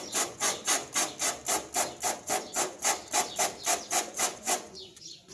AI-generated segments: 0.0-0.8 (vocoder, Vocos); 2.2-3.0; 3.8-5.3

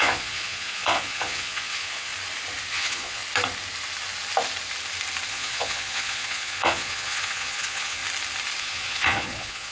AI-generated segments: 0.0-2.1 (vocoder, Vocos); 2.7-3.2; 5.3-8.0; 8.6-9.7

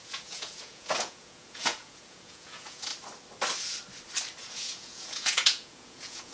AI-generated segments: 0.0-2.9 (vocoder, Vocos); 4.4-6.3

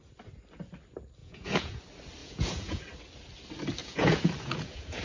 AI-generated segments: 1.2-1.8 (vocoder, Vocos); 2.2-2.8; 3.8-5.0

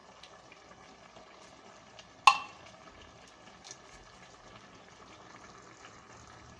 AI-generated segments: none

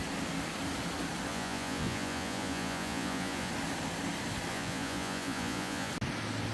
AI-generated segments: 1.3-3.5 (vocoder, Vocos); 4.5-5.9